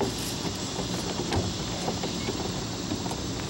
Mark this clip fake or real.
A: real